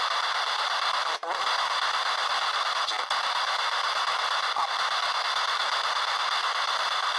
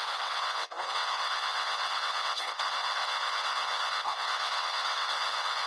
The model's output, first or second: second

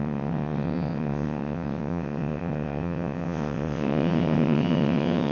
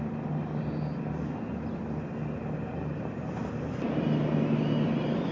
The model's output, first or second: first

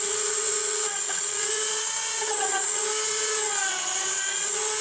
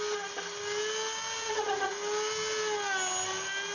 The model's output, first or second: first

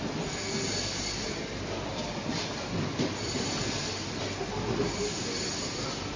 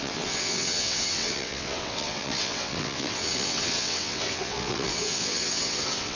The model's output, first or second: second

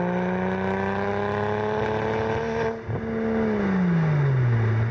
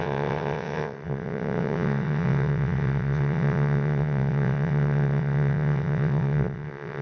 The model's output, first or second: second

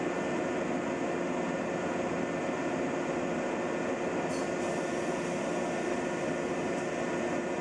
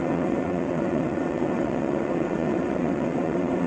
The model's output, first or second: second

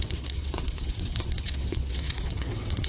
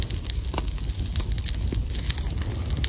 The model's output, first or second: first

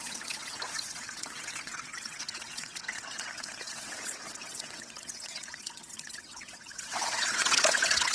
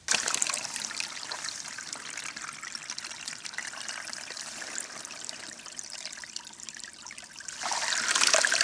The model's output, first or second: first